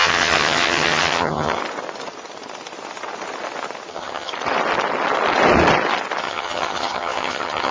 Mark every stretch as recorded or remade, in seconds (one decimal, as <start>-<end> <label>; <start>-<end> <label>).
0.0-1.6 remade; 1.6-3.9 recorded; 3.9-4.3 remade; 4.3-6.2 recorded; 6.2-7.7 remade